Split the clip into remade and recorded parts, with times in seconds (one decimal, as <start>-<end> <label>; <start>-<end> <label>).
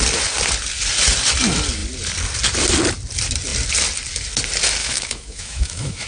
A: 0.0-4.8 recorded; 4.8-6.1 remade